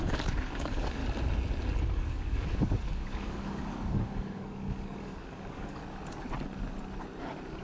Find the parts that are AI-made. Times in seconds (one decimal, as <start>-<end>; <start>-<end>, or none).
0.0-1.0; 1.8-5.8